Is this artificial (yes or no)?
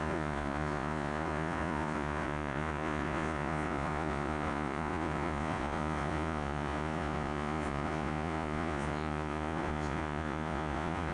yes